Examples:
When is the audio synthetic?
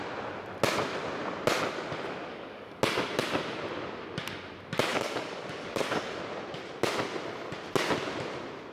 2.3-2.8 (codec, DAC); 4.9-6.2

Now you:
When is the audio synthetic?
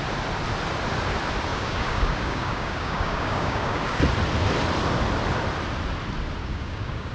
1.5-4.0 (codec, DAC); 6.4-7.1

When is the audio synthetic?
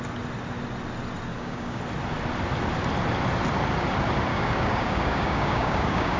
1.3-1.8 (codec, DAC); 4.3-6.2